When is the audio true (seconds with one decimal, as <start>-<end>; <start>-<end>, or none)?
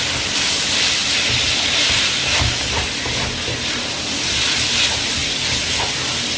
1.0-3.7; 5.2-5.7